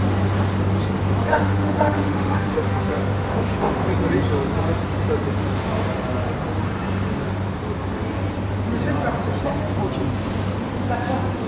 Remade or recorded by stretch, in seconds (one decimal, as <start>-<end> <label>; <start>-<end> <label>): 0.0-1.3 recorded; 1.3-3.9 remade; 3.9-11.5 recorded